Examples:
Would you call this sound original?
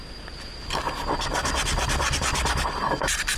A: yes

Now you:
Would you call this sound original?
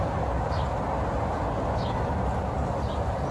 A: yes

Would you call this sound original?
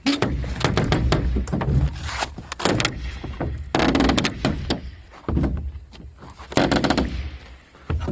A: yes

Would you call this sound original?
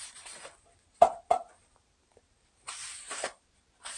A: yes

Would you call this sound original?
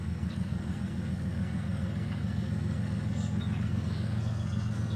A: no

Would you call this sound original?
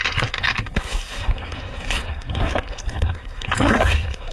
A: no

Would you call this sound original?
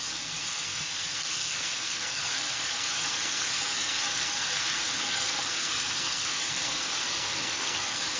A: no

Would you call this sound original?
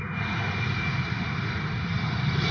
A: yes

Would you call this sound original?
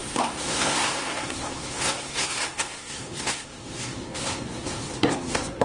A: no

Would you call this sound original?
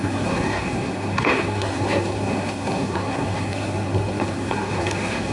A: no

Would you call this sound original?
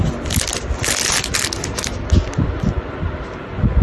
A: yes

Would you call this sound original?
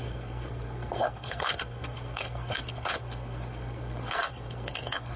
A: no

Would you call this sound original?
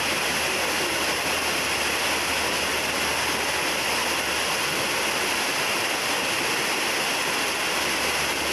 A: yes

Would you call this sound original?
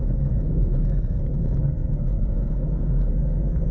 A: no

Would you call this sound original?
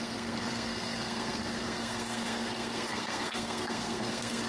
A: no